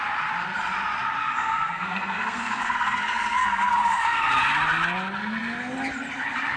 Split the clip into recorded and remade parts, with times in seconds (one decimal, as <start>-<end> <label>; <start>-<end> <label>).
0.0-1.2 recorded; 1.2-4.3 remade; 4.3-6.6 recorded